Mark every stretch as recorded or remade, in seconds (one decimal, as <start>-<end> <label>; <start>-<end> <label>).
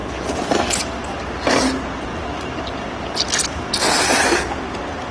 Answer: 0.0-5.1 recorded